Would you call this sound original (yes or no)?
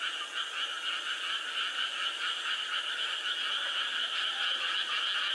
yes